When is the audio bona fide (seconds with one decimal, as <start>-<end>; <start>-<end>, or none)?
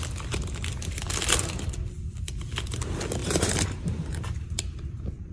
0.0-3.2